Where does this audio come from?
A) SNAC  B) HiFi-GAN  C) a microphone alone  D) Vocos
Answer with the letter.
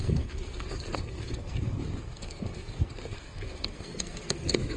A